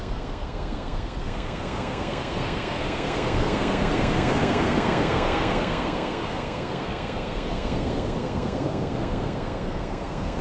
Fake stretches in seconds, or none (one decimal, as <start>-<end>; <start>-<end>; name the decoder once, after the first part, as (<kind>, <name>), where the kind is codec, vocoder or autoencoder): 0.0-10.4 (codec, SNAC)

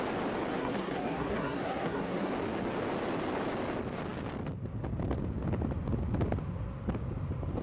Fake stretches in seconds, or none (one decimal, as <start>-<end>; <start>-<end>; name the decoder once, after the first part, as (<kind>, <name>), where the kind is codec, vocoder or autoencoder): 0.5-2.3 (codec, SNAC)

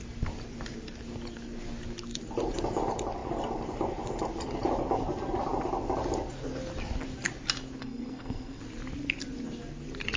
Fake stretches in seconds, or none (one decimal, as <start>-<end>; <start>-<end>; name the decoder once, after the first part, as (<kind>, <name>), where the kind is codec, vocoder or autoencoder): 7.8-8.6 (codec, SNAC)

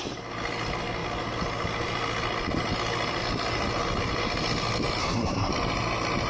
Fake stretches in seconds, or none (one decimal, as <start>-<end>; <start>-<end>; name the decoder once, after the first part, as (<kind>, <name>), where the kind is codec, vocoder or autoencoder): 5.0-5.5 (codec, SNAC)